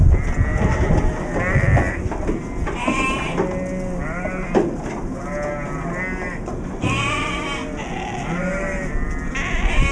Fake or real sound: real